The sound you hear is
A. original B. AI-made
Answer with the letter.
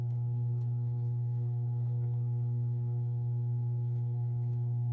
B